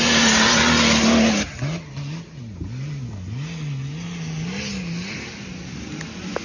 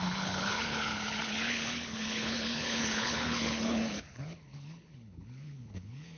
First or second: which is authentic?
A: first